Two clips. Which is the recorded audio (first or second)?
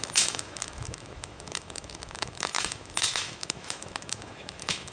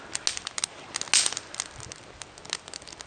second